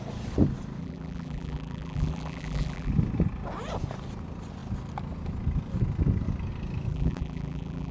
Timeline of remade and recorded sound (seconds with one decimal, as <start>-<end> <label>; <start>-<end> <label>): 0.0-0.8 recorded; 0.8-2.9 remade; 2.9-6.9 recorded; 6.9-7.9 remade